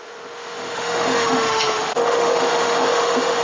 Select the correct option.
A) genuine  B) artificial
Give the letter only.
B